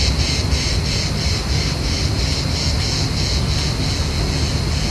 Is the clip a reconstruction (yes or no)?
no